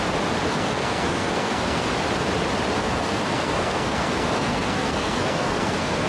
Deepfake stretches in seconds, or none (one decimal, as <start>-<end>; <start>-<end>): 0.5-1.9; 2.8-6.1